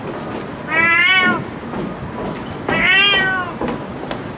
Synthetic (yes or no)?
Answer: no